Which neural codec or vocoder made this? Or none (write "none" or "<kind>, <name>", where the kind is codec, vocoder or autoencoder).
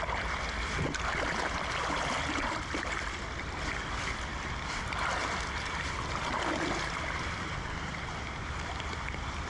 vocoder, BigVGAN v2